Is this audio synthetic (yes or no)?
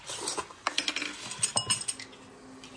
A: no